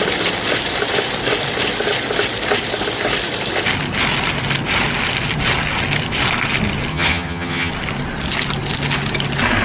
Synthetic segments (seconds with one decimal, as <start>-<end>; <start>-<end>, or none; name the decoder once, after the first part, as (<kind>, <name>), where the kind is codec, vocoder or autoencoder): 6.9-7.7 (vocoder, HiFi-GAN)